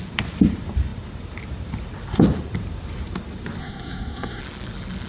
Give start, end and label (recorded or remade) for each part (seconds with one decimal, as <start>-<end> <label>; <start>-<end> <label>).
0.0-3.6 recorded; 3.6-4.4 remade; 4.4-5.1 recorded